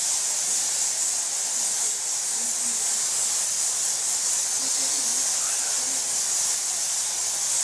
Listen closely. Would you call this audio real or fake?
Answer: real